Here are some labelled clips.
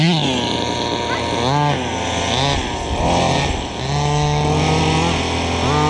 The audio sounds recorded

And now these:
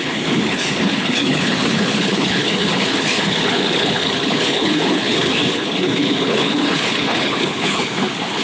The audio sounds remade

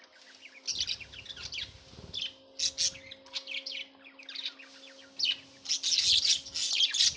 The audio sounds recorded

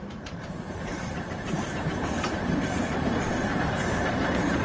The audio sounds remade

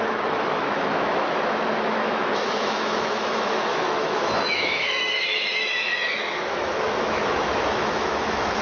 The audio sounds remade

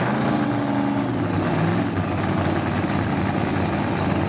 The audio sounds recorded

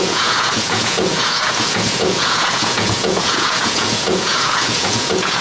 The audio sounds remade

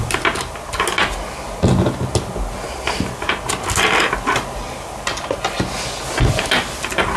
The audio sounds recorded